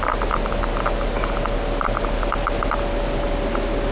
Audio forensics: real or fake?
real